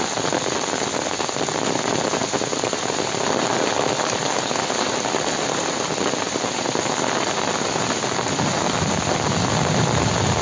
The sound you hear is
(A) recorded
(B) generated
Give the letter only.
A